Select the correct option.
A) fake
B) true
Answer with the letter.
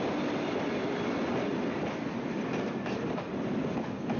B